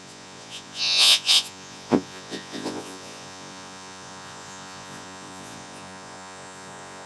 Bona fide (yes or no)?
no